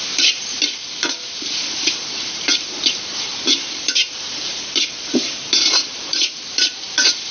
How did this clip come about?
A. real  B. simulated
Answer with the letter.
B